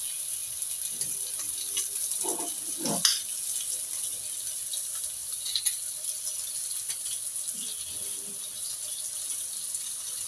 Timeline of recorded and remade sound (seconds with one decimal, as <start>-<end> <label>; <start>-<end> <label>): 0.0-10.3 recorded